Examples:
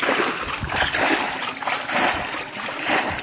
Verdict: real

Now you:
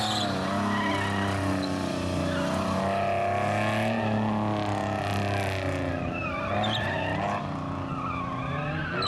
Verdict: real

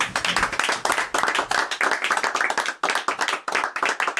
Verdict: real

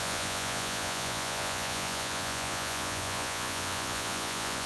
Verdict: fake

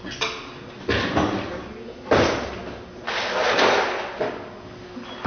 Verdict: real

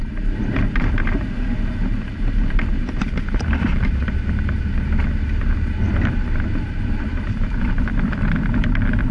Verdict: fake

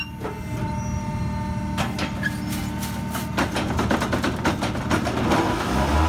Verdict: real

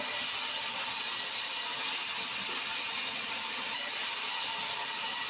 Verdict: fake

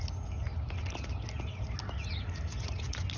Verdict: real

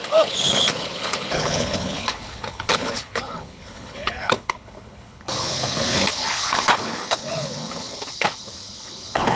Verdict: fake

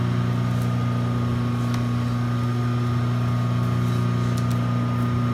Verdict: real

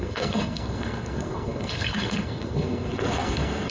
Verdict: fake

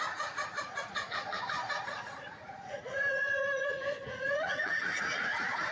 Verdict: fake